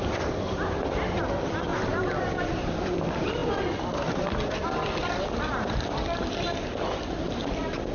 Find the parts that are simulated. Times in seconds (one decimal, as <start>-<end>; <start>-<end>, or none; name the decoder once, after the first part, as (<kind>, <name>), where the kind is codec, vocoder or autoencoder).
0.0-1.7 (vocoder, BigVGAN v2); 2.5-3.4; 7.0-7.9